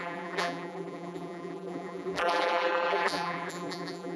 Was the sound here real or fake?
fake